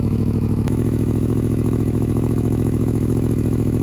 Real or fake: fake